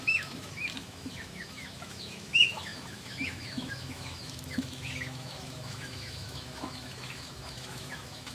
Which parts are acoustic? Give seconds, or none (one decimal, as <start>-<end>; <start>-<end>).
none